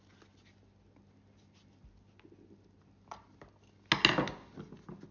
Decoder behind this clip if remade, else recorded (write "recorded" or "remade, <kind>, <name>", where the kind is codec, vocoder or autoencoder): recorded